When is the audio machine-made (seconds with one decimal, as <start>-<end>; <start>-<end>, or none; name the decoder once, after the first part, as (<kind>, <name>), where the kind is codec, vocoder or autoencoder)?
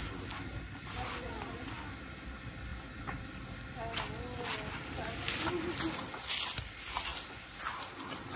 none